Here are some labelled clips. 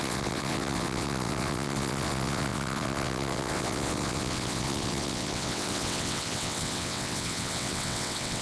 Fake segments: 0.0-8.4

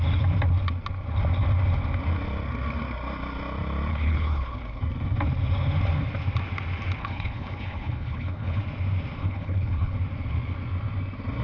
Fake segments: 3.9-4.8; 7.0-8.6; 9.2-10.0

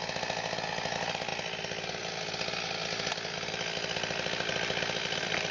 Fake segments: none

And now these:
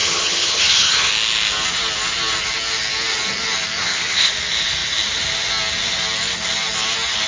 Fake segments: 0.0-1.1; 3.8-4.3

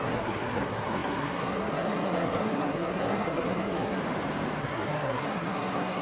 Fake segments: 0.0-4.0; 4.6-6.0